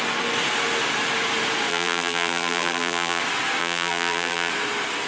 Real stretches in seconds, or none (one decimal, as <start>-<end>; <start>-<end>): 0.0-1.7; 3.2-3.6; 4.5-5.1